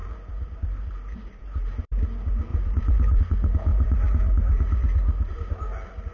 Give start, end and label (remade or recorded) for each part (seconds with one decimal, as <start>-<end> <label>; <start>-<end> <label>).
0.0-1.7 remade; 1.7-2.5 recorded; 2.5-3.2 remade; 3.2-3.7 recorded; 3.7-5.4 remade; 5.4-6.1 recorded